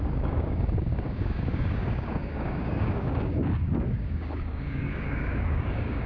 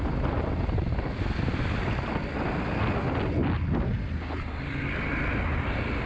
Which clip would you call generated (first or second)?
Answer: first